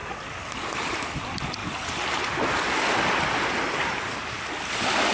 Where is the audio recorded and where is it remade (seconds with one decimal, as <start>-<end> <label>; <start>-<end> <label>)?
0.0-5.1 recorded